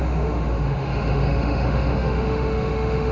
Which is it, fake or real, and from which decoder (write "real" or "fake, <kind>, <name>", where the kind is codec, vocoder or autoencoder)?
fake, autoencoder, DAC-VAE